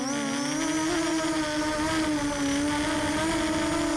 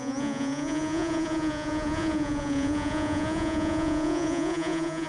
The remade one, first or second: second